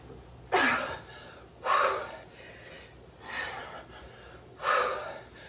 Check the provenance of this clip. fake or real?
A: real